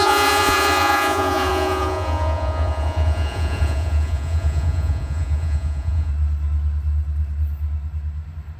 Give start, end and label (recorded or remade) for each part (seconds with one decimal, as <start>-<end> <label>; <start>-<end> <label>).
0.0-6.1 remade; 6.1-8.6 recorded